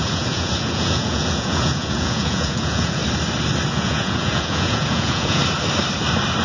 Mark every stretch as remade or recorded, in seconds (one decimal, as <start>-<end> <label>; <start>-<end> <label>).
0.0-3.0 remade; 3.0-3.7 recorded; 3.7-5.4 remade; 5.4-6.4 recorded